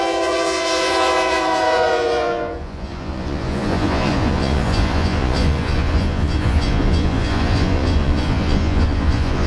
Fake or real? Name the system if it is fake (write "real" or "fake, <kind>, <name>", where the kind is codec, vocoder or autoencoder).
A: fake, vocoder, Vocos